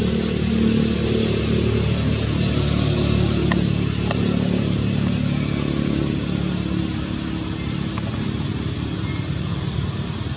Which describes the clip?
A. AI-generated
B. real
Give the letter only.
B